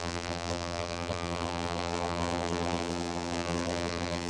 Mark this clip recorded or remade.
remade